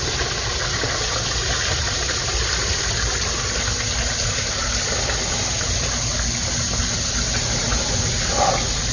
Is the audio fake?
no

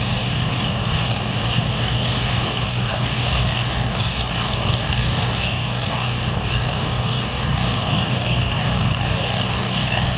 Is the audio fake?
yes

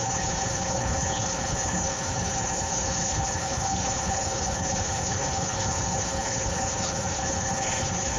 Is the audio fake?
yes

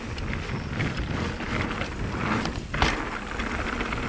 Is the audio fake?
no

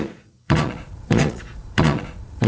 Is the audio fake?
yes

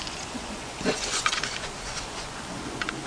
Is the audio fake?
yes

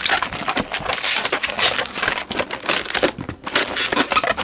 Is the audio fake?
no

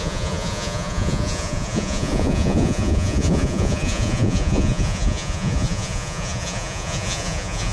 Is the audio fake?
yes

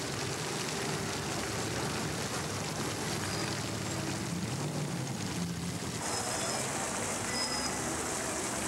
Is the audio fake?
no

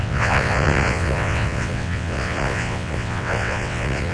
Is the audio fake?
yes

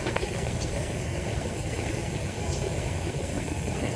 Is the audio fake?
yes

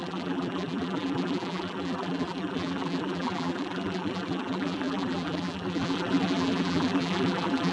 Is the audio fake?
yes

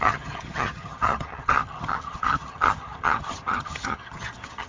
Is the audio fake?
yes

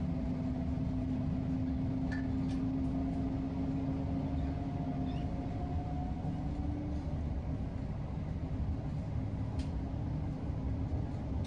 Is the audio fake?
no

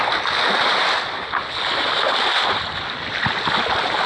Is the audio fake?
no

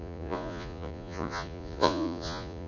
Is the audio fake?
yes